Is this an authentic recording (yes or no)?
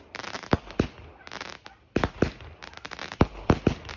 yes